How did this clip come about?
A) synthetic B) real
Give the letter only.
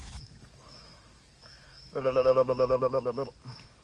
A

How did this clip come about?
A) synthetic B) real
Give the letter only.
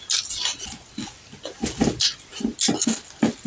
B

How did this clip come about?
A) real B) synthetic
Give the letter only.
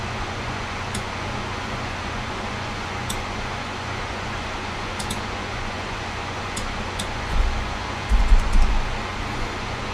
B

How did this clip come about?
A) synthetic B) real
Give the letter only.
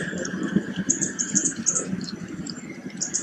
A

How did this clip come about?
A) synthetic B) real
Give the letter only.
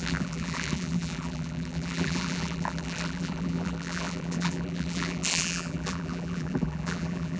A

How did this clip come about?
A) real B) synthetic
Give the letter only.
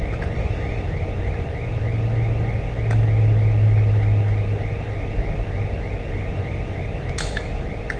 A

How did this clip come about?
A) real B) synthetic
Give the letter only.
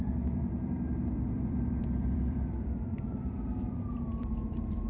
B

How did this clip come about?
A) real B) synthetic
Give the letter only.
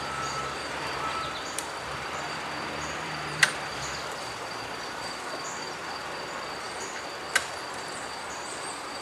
B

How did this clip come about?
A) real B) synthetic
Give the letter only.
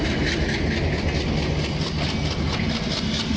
A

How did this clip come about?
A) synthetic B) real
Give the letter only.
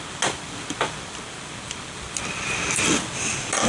B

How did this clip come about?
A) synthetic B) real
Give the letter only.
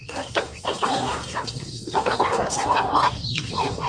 A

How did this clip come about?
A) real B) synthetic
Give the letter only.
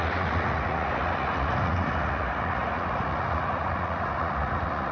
B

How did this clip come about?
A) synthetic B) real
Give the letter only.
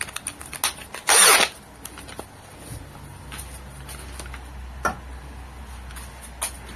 B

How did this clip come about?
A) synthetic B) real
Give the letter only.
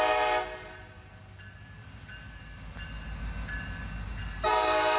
B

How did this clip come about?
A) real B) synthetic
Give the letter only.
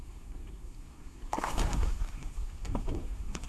B